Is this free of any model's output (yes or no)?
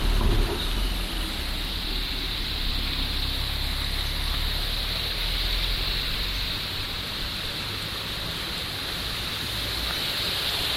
yes